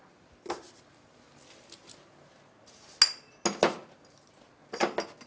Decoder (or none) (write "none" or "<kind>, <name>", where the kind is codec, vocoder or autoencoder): none